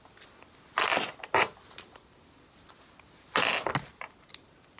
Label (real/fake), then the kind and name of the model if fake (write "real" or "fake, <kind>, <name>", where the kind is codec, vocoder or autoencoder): real